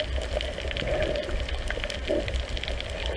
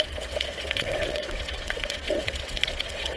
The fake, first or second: second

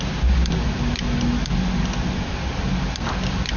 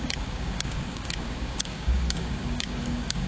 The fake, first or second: second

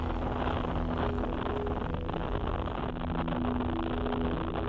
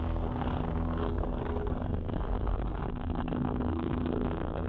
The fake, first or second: second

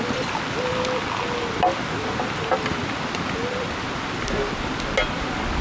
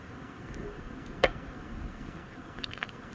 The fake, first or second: second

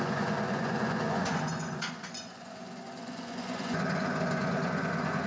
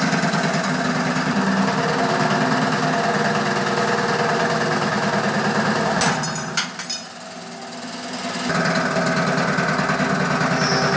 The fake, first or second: first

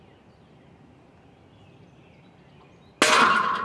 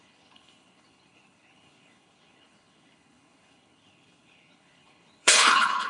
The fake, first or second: second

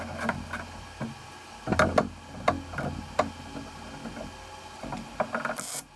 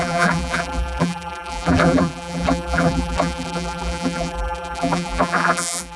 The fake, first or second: second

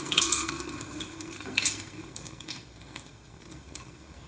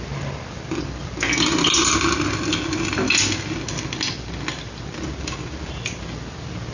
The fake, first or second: first